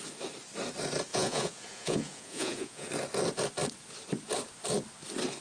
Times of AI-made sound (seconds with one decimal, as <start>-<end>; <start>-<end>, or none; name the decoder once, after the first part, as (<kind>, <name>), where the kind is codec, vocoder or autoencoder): 1.1-2.9 (vocoder, Vocos)